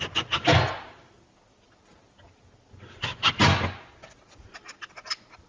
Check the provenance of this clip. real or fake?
real